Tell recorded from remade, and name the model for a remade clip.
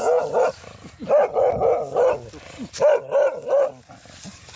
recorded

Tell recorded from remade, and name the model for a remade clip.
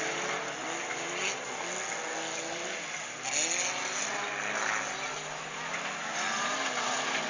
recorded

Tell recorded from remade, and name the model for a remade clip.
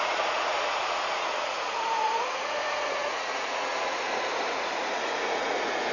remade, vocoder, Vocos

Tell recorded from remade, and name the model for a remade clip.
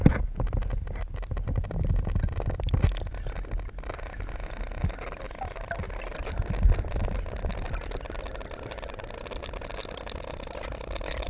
recorded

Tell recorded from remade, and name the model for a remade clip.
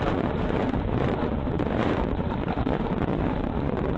remade, vocoder, Vocos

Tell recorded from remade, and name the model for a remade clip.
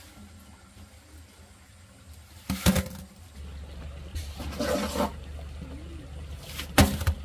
recorded